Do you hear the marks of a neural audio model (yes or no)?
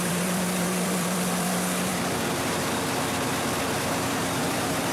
yes